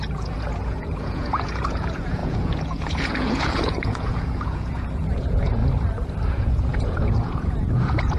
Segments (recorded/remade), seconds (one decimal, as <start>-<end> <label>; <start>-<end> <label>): 0.0-5.6 remade; 5.6-6.3 recorded; 6.3-8.2 remade